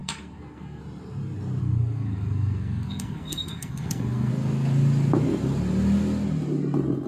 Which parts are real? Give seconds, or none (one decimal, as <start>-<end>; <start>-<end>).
0.8-1.6; 4.3-7.1